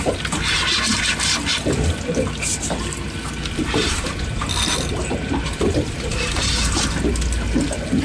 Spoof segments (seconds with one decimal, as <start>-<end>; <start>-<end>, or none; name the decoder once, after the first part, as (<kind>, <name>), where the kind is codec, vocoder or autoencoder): none

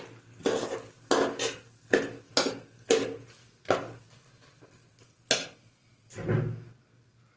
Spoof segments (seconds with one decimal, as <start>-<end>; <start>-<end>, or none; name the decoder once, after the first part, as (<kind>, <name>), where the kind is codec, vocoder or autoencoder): none

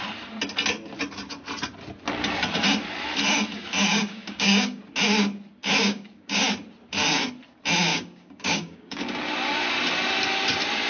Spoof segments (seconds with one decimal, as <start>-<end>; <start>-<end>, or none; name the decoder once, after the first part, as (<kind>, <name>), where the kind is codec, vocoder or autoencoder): 3.9-4.8 (codec, DAC); 5.6-6.4; 7.9-9.0

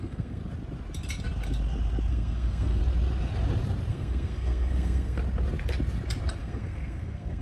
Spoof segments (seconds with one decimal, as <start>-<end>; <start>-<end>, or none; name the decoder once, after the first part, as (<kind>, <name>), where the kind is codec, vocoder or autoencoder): 0.0-0.4 (codec, SNAC); 2.1-2.8; 3.9-5.2; 6.4-7.4

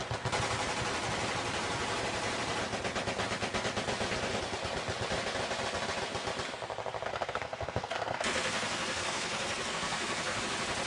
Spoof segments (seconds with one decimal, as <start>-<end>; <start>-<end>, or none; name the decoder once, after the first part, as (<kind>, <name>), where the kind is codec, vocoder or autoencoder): 7.1-10.4 (codec, SNAC)